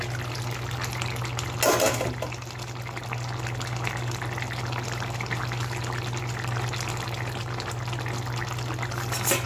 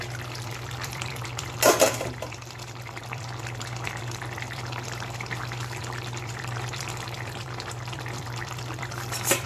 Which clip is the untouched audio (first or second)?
first